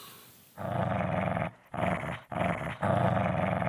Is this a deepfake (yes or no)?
no